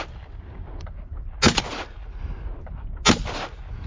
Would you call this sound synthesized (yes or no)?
no